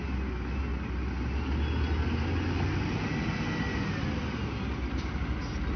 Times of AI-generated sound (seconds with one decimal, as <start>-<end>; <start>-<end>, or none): none

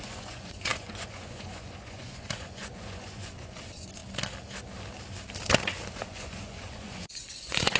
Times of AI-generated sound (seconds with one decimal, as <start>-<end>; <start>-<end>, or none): 0.0-4.0; 5.9-7.8